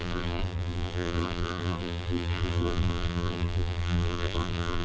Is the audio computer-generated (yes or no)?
yes